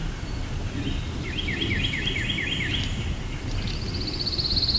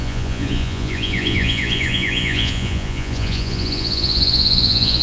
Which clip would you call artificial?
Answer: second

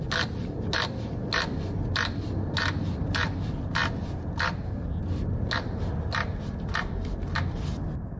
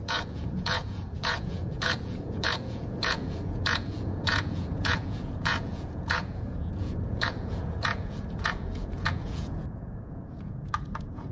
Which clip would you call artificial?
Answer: second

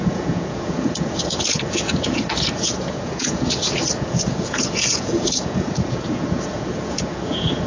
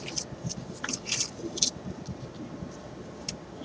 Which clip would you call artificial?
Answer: first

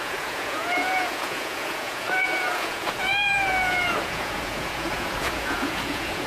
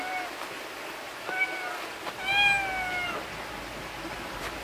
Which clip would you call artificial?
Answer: first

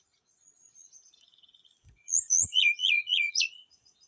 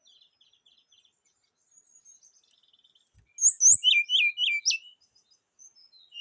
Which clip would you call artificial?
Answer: first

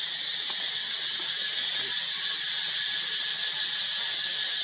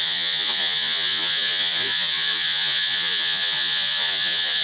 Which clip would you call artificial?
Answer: second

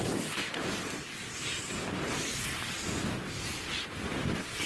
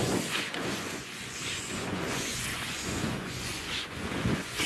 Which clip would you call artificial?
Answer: second